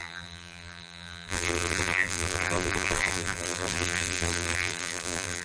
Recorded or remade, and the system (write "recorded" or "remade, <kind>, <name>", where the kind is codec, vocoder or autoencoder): remade, vocoder, BigVGAN v2